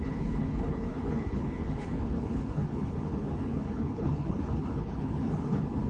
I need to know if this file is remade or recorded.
remade